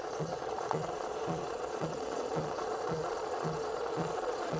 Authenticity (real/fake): fake